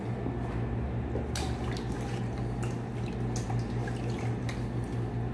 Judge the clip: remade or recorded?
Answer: recorded